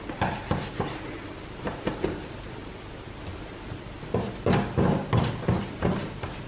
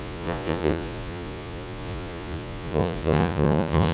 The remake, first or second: second